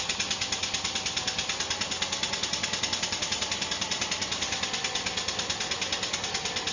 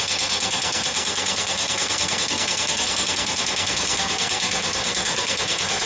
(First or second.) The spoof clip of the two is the second